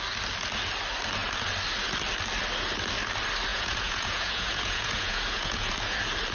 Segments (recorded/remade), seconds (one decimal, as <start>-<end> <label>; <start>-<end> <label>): 0.0-3.5 recorded; 3.5-5.7 remade; 5.7-6.3 recorded